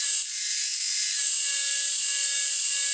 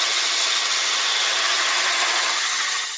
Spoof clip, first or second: second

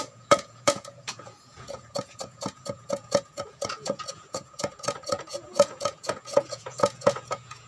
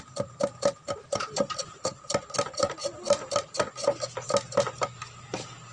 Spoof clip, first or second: first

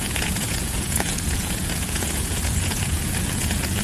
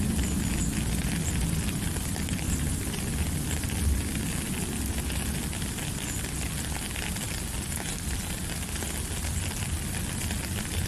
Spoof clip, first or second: first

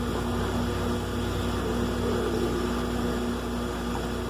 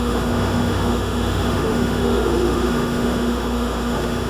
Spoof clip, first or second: second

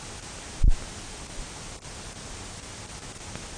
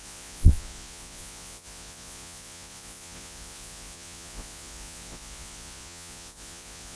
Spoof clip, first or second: second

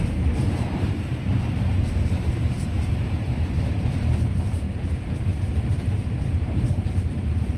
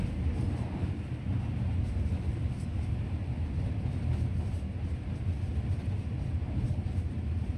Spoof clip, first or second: first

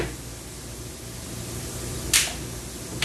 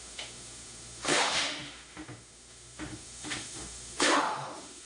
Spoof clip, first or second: second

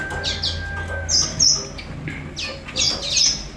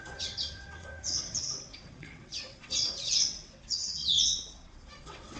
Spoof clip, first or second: second